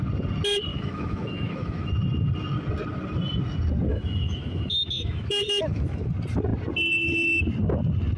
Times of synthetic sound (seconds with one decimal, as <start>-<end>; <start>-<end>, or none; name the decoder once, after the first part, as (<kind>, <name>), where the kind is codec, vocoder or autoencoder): 0.7-1.9 (autoencoder, DAC-VAE); 3.9-6.1